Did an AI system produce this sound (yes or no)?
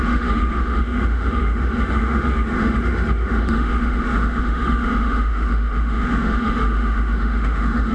yes